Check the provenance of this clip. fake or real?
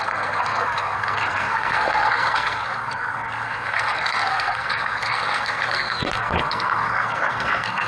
fake